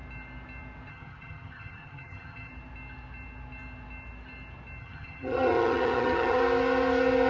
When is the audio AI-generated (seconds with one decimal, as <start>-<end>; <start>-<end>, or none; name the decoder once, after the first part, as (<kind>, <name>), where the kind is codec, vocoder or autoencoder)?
0.9-2.5 (vocoder, HiFi-GAN); 4.8-6.4